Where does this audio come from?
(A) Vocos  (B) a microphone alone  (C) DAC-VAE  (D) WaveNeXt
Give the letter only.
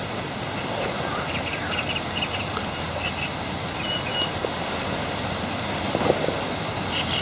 B